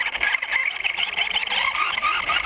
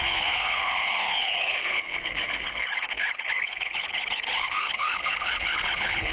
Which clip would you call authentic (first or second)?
first